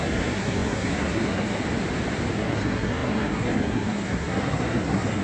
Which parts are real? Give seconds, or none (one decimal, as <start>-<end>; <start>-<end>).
1.6-2.3